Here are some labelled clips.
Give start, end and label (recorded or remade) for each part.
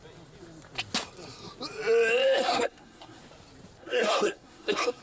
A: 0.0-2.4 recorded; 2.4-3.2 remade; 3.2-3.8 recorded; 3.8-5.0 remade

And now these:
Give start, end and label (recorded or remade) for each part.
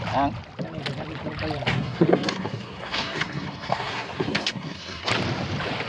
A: 0.0-1.7 recorded; 1.7-5.1 remade; 5.1-5.9 recorded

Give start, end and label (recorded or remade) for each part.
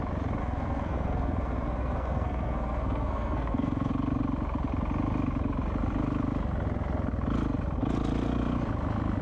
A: 0.0-0.4 recorded; 0.4-3.9 remade; 3.9-9.2 recorded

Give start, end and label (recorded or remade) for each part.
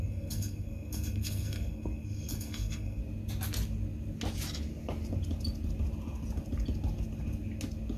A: 0.0-3.0 remade; 3.0-8.0 recorded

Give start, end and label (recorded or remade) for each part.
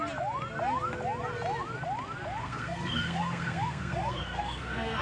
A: 0.0-2.4 recorded; 2.4-5.0 remade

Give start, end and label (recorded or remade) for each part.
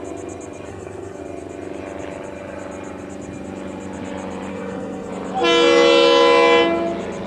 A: 0.0-0.7 recorded; 0.7-1.2 remade; 1.2-4.5 recorded; 4.5-5.1 remade; 5.1-7.3 recorded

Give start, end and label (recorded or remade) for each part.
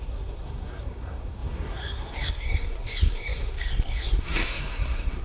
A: 0.0-5.2 remade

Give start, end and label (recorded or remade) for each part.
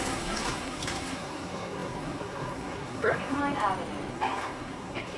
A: 0.0-3.4 remade; 3.4-4.1 recorded; 4.1-5.2 remade